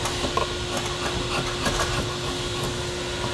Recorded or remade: recorded